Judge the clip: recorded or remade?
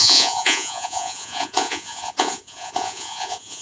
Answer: remade